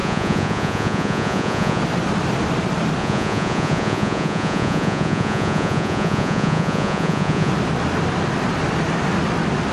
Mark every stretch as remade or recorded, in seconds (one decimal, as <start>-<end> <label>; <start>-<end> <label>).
0.0-1.8 remade; 1.8-3.0 recorded; 3.0-7.5 remade; 7.5-9.7 recorded